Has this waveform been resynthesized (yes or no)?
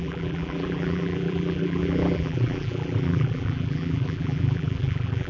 yes